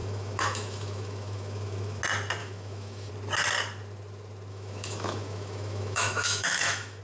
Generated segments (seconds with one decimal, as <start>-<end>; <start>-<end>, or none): 0.0-2.0; 2.4-3.1; 4.5-7.0